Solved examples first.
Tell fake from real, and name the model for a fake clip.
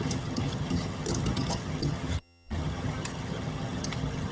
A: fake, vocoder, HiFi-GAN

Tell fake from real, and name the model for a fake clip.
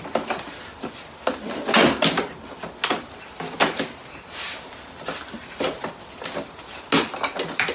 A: real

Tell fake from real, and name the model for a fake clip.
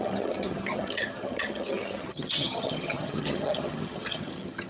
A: fake, vocoder, HiFi-GAN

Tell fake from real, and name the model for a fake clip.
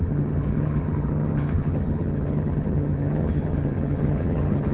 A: fake, vocoder, HiFi-GAN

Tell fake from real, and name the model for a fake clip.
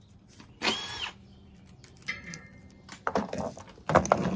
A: real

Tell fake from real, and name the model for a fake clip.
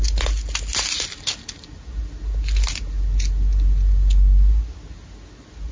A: real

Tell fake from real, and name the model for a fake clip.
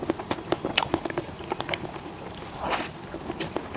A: real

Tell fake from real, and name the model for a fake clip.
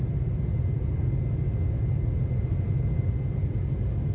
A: real